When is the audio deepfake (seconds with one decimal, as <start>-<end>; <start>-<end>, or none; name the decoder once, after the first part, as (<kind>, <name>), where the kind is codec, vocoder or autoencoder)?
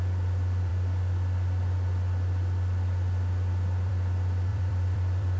4.5-5.4 (vocoder, BigVGAN v2)